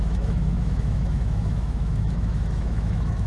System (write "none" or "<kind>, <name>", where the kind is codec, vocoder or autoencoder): autoencoder, DAC-VAE